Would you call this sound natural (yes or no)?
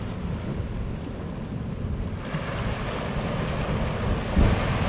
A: yes